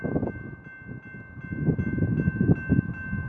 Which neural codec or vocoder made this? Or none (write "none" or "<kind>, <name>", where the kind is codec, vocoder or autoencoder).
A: none